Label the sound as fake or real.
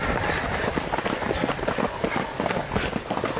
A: real